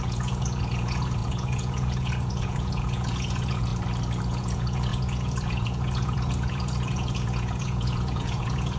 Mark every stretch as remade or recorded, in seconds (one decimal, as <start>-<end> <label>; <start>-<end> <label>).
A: 0.0-3.7 remade; 3.7-4.3 recorded; 4.3-8.8 remade